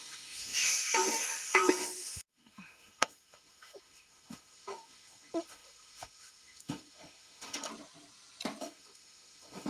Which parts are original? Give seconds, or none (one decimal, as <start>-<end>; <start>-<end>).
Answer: 7.7-8.6